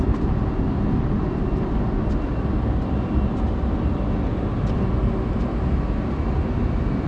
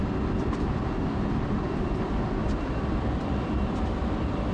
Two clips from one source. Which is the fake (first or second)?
second